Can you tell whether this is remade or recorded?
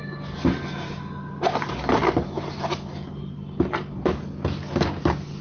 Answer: recorded